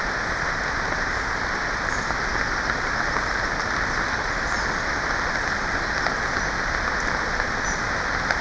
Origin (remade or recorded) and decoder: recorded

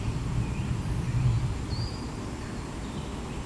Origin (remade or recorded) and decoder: recorded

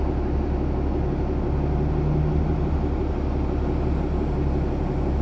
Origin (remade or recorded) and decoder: recorded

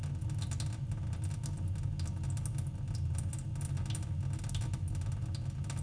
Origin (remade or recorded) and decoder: recorded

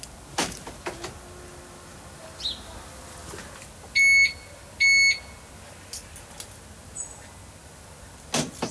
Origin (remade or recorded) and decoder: recorded